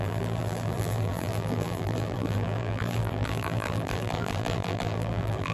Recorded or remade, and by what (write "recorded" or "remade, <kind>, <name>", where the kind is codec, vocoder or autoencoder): remade, vocoder, BigVGAN v2